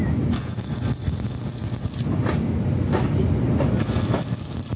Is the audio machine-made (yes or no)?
no